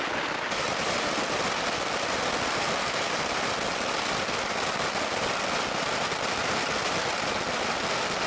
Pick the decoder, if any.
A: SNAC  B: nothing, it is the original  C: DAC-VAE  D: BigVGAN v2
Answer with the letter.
B